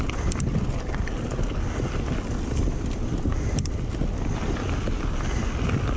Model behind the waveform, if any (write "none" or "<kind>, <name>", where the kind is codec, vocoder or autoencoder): none